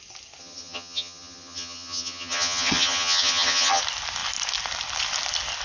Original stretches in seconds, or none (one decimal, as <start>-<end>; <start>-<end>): 0.0-0.4; 3.8-5.6